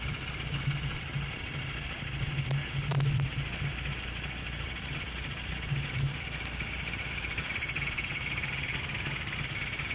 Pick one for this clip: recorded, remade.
recorded